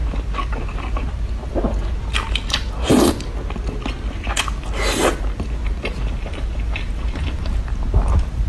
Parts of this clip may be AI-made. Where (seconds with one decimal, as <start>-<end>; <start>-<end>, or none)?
none